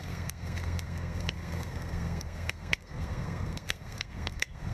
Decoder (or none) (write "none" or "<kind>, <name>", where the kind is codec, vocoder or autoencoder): codec, SNAC